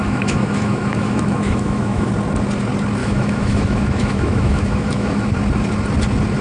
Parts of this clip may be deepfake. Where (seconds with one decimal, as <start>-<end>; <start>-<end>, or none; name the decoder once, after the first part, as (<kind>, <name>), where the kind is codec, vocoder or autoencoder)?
0.0-2.1 (autoencoder, DAC-VAE); 3.0-5.3